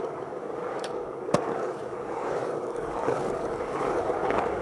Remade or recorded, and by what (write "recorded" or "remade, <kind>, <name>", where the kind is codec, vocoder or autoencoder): remade, codec, DAC